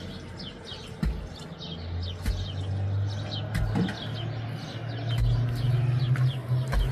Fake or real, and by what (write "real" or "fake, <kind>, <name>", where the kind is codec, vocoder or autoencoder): real